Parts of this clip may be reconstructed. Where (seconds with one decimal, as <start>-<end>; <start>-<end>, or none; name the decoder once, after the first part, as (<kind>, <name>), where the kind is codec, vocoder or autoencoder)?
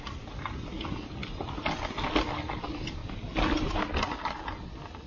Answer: none